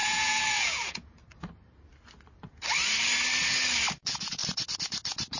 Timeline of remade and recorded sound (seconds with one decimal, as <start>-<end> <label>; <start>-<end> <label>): 0.0-1.2 remade; 1.2-4.0 recorded; 4.0-4.4 remade; 4.4-5.4 recorded

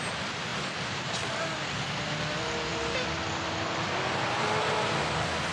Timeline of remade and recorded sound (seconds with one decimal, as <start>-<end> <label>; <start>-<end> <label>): 0.0-5.5 recorded

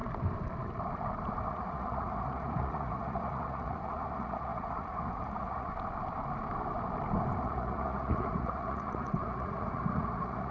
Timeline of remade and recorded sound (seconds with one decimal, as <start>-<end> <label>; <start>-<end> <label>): 0.0-1.5 recorded; 1.5-5.7 remade; 5.7-7.4 recorded; 7.4-10.5 remade

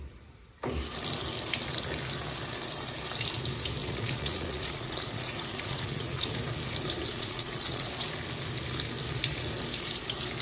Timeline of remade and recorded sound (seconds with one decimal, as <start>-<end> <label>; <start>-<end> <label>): 0.0-3.8 recorded; 3.8-6.4 remade; 6.4-7.1 recorded; 7.1-7.9 remade; 7.9-10.4 recorded

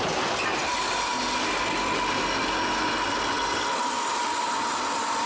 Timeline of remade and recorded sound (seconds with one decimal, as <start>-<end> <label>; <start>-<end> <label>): 0.0-5.3 recorded

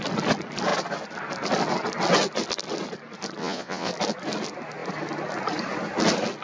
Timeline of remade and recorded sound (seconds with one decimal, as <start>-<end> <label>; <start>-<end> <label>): 0.0-3.4 recorded; 3.4-3.9 remade; 3.9-6.4 recorded